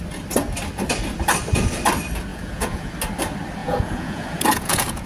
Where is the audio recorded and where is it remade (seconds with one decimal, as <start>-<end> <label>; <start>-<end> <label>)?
0.0-2.3 recorded; 2.3-2.9 remade; 2.9-3.6 recorded; 3.6-5.1 remade